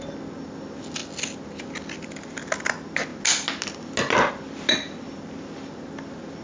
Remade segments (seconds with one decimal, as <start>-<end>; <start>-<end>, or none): none